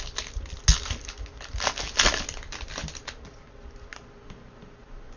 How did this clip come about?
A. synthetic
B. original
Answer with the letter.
B